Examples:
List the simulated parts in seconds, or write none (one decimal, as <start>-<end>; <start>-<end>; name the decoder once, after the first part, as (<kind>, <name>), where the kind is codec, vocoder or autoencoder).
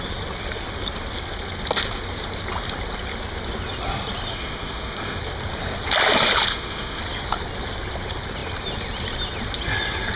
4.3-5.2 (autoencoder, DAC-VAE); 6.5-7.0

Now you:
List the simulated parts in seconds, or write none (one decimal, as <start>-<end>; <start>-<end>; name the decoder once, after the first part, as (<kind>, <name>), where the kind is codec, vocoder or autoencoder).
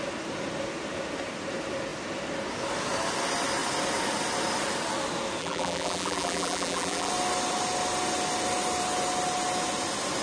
5.4-7.1 (vocoder, BigVGAN v2)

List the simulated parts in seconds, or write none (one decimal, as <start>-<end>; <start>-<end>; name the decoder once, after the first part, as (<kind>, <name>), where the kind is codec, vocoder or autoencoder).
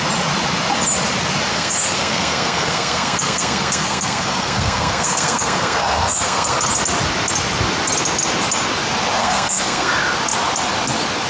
1.5-6.6 (codec, SNAC); 9.2-9.9